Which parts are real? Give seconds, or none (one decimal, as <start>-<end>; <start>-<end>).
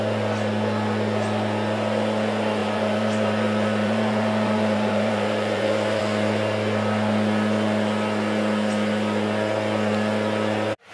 0.0-2.6; 6.0-10.9